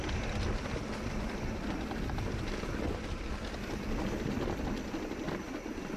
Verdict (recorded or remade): recorded